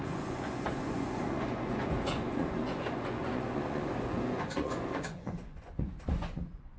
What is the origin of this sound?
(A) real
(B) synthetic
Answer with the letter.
B